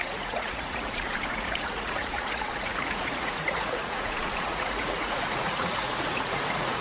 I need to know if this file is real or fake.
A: fake